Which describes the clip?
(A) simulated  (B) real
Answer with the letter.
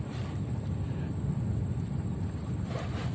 B